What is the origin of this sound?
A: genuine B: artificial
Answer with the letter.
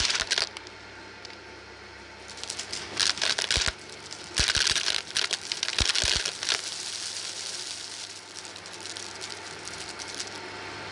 A